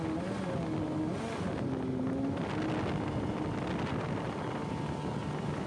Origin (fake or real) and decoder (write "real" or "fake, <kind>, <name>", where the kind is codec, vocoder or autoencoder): real